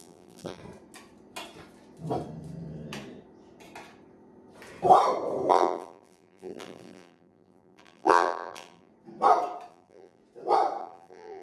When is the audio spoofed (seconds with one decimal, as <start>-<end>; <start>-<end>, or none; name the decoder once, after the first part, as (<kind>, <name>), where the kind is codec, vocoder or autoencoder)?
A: 0.0-0.6 (vocoder, BigVGAN v2); 5.5-8.9; 9.7-10.2; 10.8-11.4